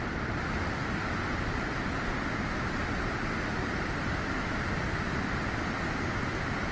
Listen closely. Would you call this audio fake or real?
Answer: real